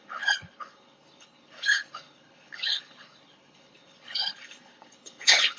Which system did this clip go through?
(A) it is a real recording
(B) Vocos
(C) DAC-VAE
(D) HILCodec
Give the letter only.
D